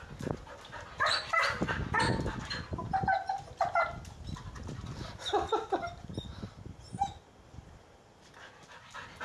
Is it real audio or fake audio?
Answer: real